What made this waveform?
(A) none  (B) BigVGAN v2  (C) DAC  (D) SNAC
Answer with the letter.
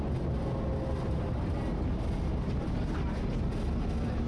A